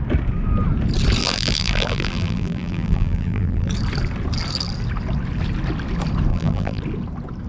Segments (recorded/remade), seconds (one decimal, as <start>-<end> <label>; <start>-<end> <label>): 0.0-1.2 recorded; 1.2-3.7 remade; 3.7-6.3 recorded; 6.3-6.8 remade; 6.8-7.5 recorded